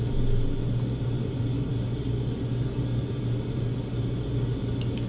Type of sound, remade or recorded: recorded